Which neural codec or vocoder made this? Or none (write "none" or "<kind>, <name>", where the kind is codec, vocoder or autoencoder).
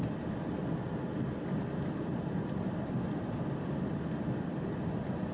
none